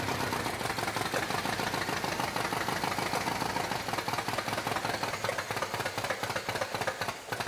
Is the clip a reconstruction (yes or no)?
no